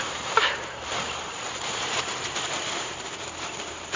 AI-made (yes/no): yes